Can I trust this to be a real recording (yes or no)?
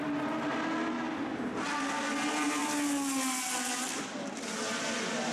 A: yes